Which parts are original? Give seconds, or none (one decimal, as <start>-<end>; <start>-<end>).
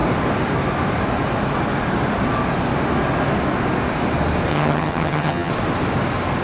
0.0-4.5; 5.5-6.4